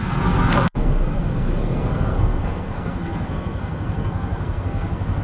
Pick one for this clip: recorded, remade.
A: remade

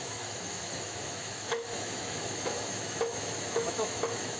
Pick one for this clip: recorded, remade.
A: remade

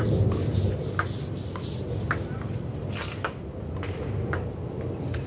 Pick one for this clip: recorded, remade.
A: recorded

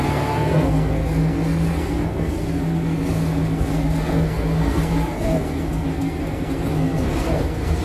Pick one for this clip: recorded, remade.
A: remade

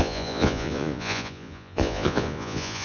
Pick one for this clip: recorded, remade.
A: remade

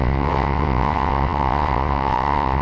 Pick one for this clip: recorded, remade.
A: remade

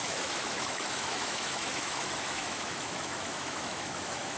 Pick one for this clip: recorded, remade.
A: remade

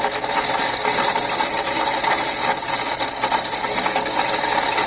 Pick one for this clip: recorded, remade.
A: recorded